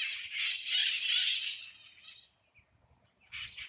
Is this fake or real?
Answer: real